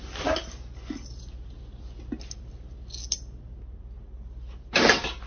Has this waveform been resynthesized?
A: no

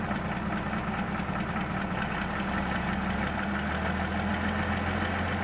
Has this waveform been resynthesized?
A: no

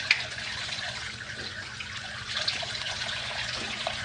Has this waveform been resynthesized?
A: yes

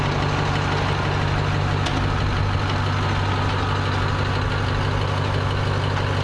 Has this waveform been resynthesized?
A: no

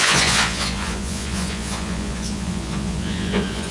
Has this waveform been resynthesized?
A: yes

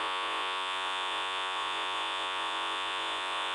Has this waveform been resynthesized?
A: yes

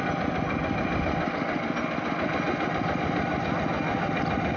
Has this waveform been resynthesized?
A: no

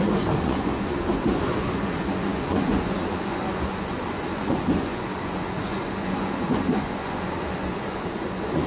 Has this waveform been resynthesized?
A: yes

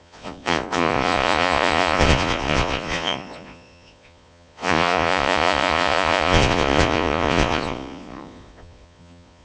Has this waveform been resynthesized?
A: yes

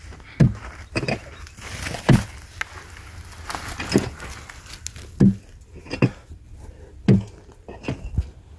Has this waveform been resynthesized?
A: no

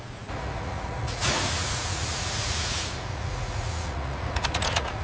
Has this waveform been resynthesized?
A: yes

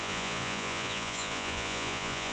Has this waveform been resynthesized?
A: yes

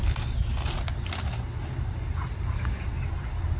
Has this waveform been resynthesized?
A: no